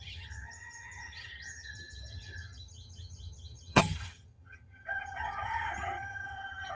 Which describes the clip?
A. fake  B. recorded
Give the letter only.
A